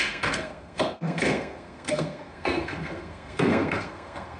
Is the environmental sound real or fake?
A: fake